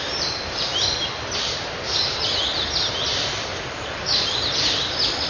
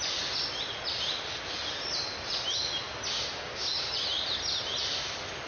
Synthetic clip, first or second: first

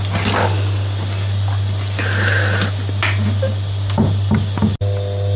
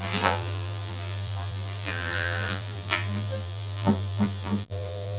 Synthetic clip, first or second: second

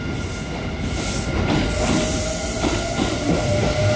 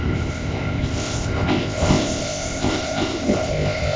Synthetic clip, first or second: second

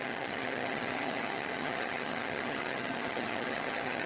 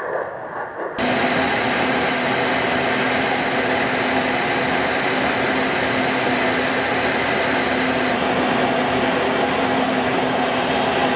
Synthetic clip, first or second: first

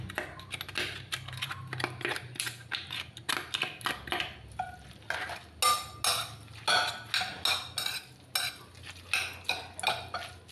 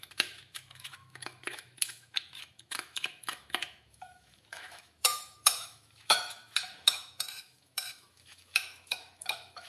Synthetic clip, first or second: second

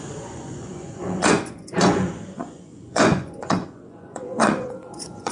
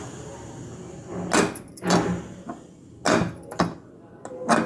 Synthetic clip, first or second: first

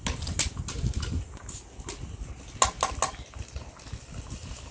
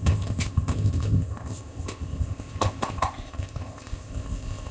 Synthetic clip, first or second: second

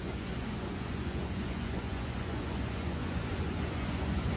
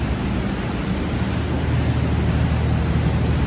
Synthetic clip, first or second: first